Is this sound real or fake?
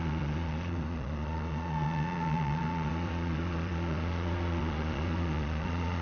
fake